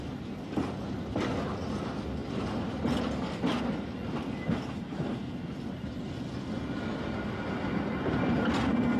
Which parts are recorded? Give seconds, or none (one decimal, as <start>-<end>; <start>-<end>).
0.0-9.0